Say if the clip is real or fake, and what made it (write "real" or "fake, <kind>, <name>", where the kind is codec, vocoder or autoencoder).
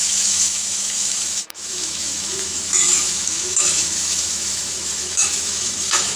fake, autoencoder, DAC-VAE